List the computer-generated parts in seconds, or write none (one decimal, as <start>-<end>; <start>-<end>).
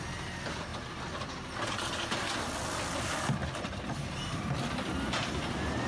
none